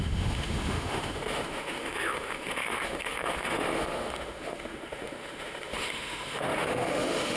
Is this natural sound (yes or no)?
no